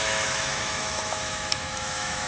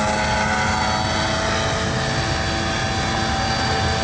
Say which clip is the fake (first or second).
first